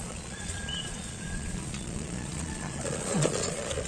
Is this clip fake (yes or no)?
yes